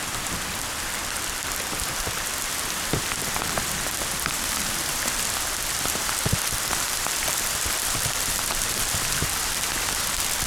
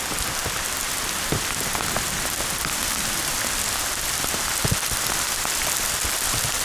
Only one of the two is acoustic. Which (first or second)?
second